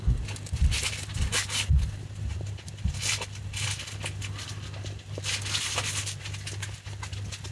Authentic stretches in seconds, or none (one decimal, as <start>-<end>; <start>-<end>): 0.0-7.5